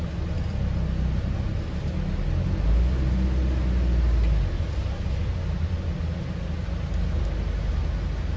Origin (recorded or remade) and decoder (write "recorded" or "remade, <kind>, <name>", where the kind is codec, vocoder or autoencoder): recorded